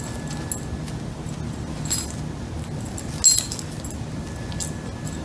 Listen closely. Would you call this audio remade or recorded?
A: recorded